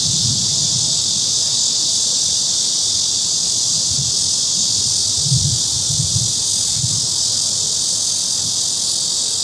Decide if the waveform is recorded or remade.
recorded